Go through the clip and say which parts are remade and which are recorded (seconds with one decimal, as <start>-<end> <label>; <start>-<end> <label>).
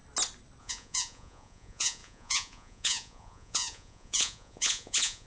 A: 0.0-0.6 recorded; 0.6-5.3 remade